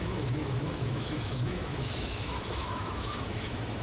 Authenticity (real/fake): fake